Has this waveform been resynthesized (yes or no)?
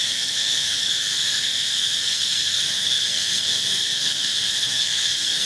yes